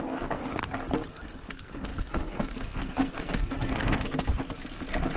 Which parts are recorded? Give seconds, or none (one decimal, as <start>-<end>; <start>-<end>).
0.4-1.1; 4.3-5.2